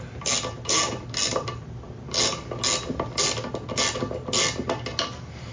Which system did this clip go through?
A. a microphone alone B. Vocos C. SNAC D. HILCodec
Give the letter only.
A